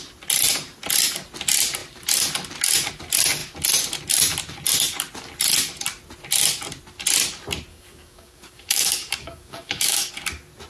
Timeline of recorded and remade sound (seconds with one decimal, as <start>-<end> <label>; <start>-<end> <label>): 0.0-7.7 recorded; 7.7-10.1 remade; 10.1-10.7 recorded